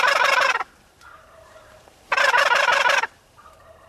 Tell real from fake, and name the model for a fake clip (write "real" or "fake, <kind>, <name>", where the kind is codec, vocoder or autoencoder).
fake, vocoder, BigVGAN v2